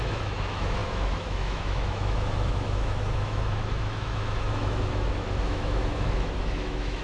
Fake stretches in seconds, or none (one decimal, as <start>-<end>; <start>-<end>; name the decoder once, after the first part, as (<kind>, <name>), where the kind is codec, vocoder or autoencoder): 0.0-7.0 (autoencoder, DAC-VAE)